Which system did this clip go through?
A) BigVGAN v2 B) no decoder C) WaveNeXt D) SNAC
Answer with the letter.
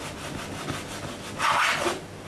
B